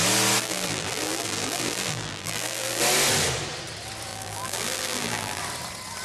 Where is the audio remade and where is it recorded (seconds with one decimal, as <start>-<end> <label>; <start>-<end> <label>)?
0.0-0.4 recorded; 0.4-2.8 remade; 2.8-4.1 recorded; 4.1-5.4 remade; 5.4-6.0 recorded